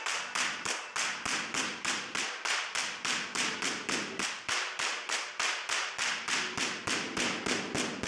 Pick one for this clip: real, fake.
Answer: fake